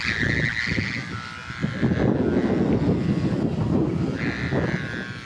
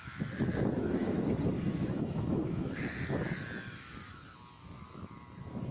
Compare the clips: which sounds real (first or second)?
first